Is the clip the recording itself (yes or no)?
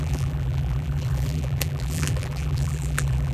no